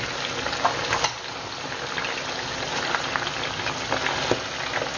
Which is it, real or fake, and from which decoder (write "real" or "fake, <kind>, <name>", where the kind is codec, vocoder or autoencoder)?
real